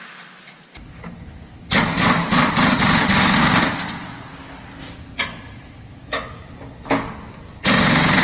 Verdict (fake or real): real